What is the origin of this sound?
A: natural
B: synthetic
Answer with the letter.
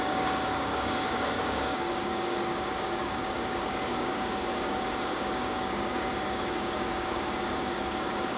B